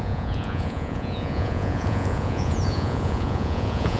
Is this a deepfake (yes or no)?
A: yes